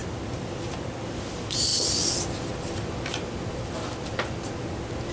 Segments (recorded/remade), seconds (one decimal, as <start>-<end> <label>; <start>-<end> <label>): 0.0-5.1 recorded